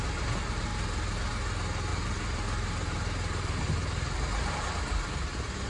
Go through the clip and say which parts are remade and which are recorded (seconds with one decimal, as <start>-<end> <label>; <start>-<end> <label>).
0.0-1.9 recorded; 1.9-5.3 remade; 5.3-5.7 recorded